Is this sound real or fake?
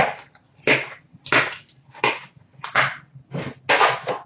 real